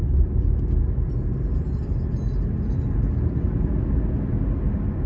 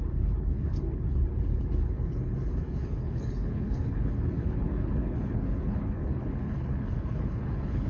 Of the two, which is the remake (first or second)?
second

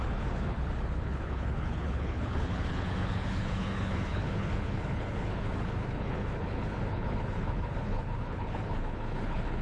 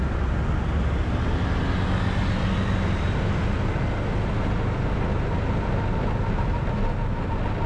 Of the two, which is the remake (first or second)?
first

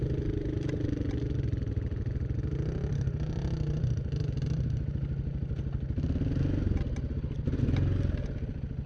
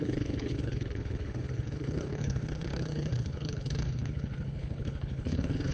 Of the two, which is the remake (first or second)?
second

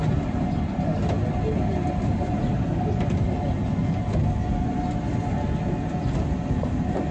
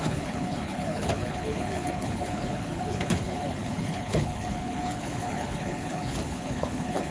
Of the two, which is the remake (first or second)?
second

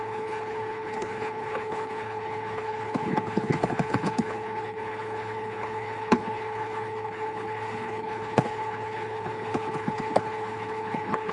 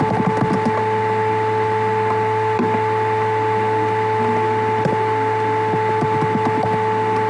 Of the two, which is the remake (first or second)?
first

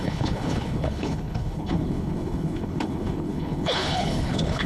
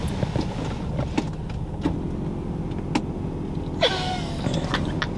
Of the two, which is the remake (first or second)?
first